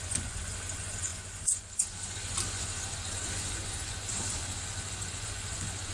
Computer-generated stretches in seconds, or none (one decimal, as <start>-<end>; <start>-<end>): 0.0-5.9

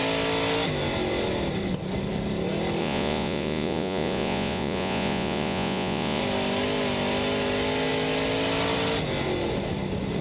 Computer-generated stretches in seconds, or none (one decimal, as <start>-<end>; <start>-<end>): 2.8-6.2

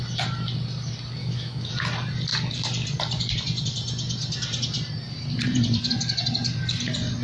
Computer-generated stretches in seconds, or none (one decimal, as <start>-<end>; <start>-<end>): 1.2-1.7

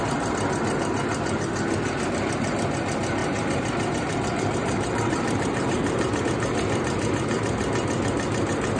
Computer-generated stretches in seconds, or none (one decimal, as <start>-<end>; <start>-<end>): 3.2-6.2

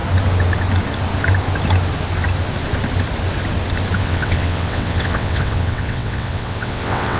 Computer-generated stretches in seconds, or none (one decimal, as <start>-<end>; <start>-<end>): 4.0-7.2

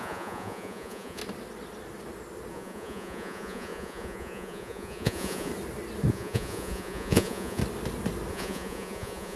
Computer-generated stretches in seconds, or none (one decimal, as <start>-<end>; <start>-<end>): 0.0-1.2; 2.5-5.5; 6.1-7.6; 8.3-9.4